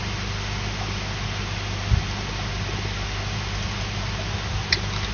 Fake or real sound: real